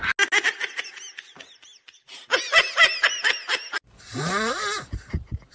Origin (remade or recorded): recorded